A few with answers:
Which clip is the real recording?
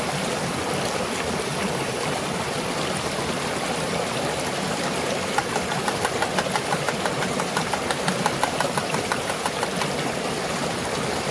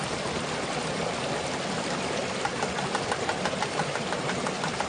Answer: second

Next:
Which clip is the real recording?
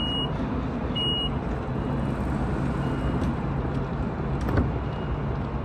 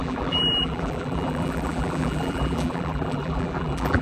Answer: first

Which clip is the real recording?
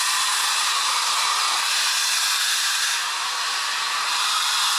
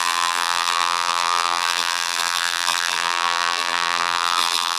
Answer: first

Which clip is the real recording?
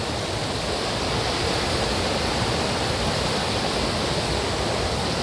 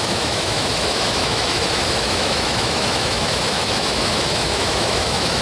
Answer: first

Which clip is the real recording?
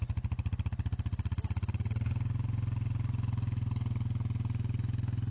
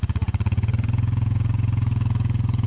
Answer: first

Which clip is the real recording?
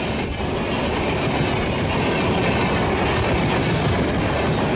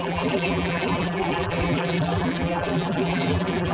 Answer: first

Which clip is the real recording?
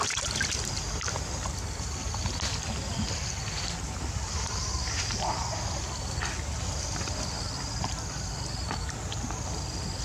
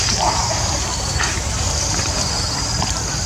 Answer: first